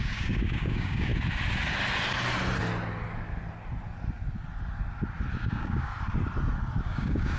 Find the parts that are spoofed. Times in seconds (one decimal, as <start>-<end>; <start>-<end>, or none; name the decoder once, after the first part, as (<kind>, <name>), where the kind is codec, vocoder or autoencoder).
0.0-1.1 (codec, DAC); 5.4-5.9; 6.8-7.4